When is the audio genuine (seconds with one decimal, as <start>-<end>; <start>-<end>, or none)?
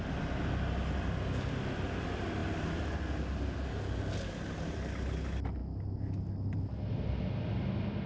0.0-8.1